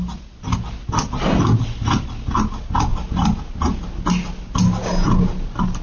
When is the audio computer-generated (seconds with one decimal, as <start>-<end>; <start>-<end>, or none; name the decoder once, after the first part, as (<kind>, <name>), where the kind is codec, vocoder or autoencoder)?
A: none